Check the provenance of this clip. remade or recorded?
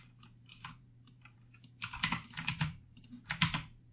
remade